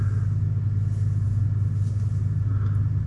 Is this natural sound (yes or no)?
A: yes